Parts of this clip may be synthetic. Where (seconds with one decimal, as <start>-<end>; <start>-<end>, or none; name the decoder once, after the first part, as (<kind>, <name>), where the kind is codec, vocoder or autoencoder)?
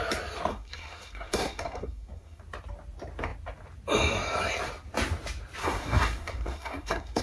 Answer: 0.5-2.4 (codec, SNAC); 5.6-7.2